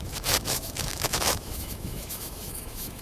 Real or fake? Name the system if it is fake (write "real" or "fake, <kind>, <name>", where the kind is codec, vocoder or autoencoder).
fake, autoencoder, DAC-VAE